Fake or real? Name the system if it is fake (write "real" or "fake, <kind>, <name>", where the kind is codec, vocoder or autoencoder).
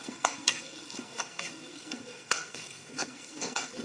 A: fake, codec, SNAC